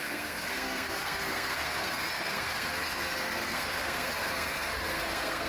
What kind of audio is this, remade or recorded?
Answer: remade